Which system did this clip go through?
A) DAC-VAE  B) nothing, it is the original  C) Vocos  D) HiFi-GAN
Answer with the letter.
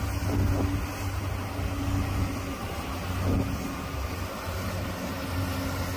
B